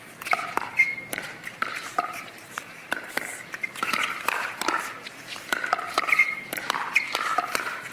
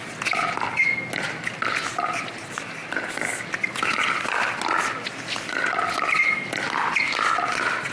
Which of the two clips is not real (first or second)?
first